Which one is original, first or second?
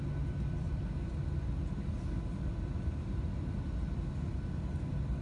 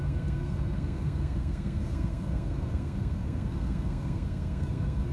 first